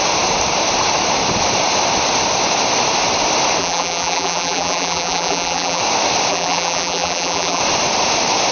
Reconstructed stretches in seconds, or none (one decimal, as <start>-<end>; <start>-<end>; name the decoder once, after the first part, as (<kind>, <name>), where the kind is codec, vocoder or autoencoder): 3.6-5.8 (vocoder, BigVGAN v2); 6.3-7.6